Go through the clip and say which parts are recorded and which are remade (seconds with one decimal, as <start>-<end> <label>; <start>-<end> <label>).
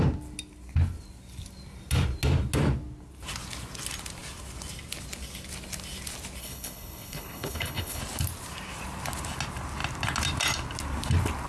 0.0-6.4 recorded; 6.4-8.0 remade; 8.0-11.5 recorded